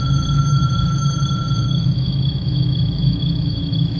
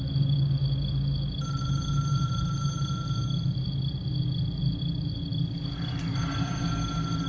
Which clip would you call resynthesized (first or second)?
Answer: first